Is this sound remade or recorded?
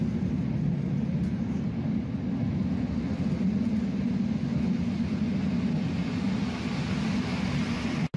recorded